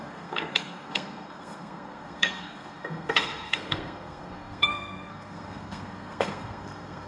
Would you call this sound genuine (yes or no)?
no